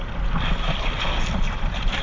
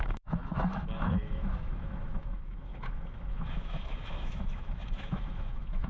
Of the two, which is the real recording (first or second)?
first